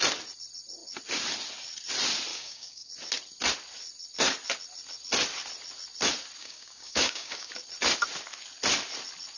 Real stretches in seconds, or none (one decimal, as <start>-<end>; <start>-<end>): 0.0-2.3; 2.9-6.4; 7.5-9.4